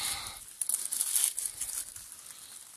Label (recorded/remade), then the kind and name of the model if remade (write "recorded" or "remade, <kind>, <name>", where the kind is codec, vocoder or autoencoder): recorded